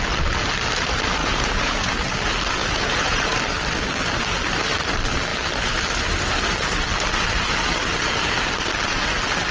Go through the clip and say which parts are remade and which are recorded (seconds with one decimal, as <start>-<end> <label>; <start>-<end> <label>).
0.0-1.2 recorded; 1.2-1.9 remade; 1.9-2.6 recorded; 2.6-3.4 remade; 3.4-9.5 recorded